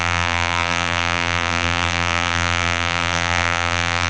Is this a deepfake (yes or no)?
yes